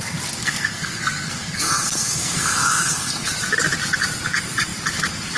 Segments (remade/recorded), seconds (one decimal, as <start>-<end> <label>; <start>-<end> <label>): 0.0-0.4 recorded; 0.4-3.3 remade; 3.3-5.4 recorded